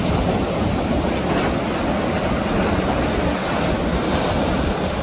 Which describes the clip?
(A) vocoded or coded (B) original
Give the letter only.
B